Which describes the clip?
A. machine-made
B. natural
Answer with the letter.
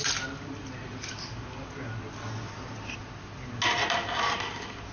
B